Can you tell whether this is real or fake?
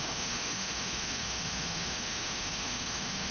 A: fake